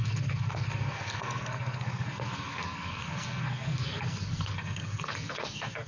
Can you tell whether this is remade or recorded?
remade